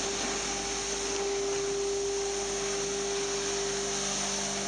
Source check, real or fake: real